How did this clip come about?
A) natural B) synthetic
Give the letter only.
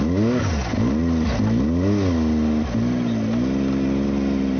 A